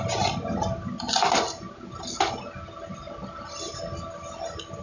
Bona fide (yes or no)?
yes